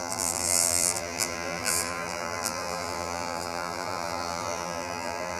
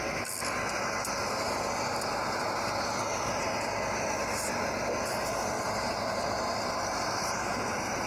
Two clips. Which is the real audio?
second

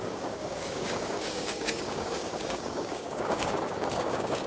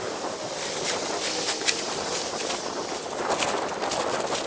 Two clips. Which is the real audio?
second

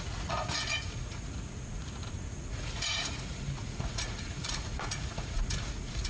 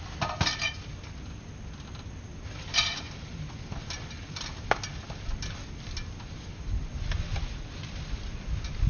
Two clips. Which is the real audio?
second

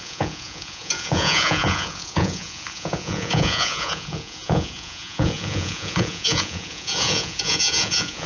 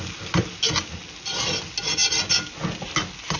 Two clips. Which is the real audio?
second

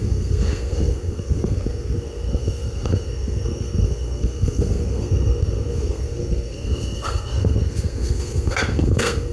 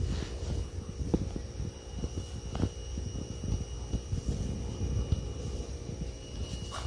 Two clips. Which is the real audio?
second